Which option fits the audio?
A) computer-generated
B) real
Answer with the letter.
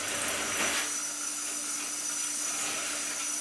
B